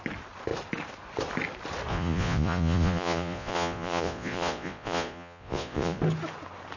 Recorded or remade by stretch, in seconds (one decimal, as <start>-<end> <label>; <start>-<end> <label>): 0.0-1.9 recorded; 1.9-6.0 remade; 6.0-6.8 recorded